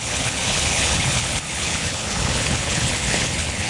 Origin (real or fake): fake